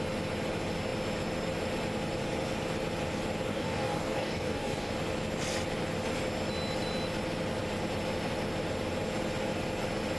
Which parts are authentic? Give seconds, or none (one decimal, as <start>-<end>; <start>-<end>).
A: 0.0-3.5; 4.9-10.2